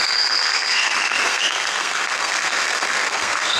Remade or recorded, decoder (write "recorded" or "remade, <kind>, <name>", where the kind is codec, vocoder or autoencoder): remade, codec, SNAC